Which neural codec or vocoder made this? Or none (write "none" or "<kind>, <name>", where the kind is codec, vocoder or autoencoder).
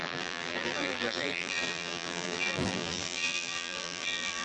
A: vocoder, BigVGAN v2